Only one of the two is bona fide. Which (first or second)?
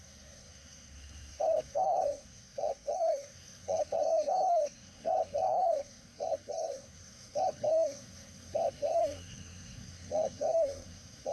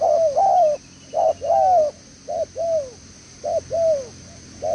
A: second